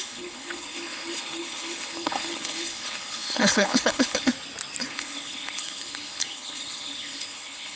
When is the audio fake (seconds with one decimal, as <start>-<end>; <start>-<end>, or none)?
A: 0.0-4.3; 4.9-7.8